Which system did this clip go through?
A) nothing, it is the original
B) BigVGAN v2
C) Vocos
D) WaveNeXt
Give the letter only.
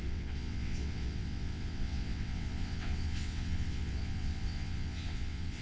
D